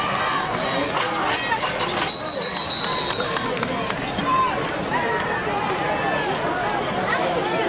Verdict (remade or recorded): recorded